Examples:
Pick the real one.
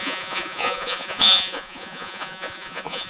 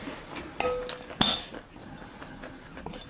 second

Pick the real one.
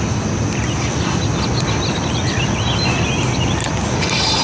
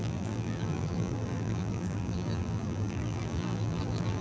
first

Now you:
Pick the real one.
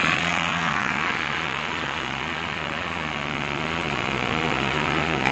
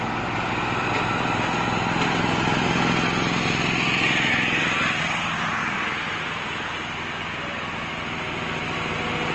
second